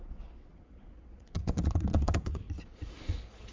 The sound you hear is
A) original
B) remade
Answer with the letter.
B